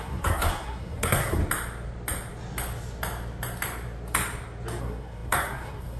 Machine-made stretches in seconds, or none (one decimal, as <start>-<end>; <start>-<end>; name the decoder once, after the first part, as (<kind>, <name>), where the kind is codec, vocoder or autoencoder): 0.0-1.4 (codec, SNAC); 4.8-6.0